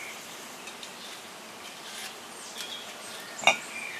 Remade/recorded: recorded